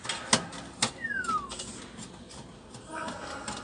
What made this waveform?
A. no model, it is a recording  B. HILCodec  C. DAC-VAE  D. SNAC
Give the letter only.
A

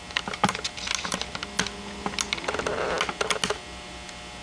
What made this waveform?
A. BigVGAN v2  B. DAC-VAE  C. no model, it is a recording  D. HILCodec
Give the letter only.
C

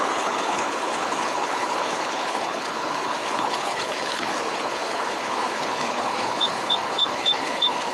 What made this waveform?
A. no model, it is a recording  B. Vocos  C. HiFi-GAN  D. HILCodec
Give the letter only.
D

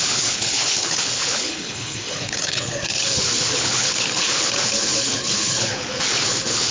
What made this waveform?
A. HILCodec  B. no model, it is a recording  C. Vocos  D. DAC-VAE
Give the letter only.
A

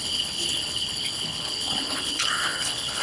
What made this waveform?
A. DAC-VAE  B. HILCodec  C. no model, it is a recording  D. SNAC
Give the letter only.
B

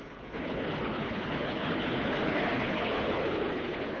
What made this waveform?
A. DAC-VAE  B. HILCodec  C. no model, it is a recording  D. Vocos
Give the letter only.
B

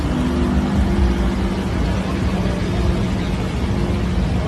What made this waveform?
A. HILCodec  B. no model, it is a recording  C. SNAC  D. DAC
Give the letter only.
B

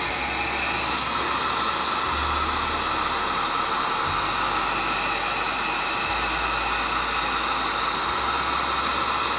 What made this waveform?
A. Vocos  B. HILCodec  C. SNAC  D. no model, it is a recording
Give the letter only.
D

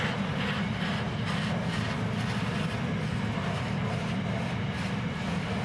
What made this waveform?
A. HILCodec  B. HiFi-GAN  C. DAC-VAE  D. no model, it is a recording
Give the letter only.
D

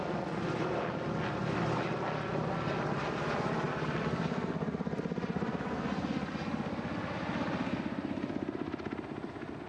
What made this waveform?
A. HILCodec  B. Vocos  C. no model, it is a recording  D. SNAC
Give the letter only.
C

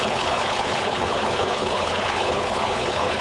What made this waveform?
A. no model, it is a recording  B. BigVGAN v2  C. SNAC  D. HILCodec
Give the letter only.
D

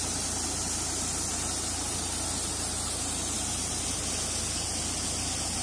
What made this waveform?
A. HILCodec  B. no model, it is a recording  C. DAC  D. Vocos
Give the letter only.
B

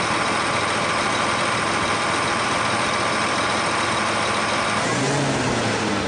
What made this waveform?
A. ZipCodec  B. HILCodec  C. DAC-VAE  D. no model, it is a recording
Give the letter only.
D